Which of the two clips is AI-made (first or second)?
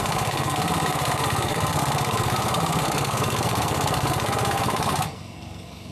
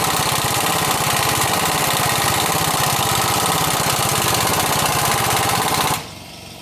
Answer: first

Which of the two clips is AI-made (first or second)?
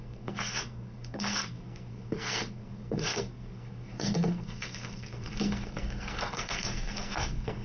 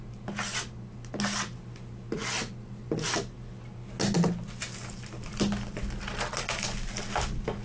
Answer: first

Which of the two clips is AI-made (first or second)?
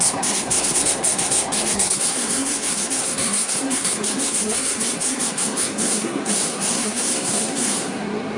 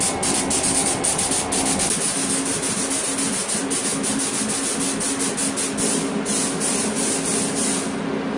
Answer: first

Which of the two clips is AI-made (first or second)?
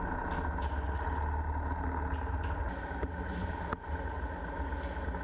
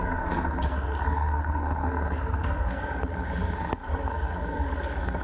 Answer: second